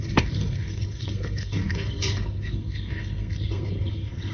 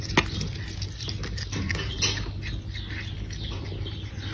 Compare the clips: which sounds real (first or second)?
second